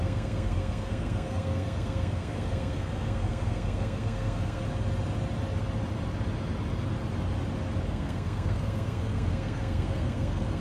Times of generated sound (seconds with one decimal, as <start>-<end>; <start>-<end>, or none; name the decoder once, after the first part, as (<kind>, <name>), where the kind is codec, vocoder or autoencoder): 0.0-4.6 (codec, SNAC); 7.9-10.6